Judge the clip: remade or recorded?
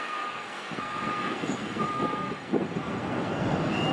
remade